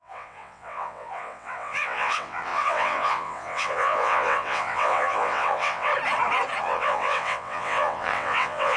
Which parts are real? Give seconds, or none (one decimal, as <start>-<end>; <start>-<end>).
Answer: 5.9-6.6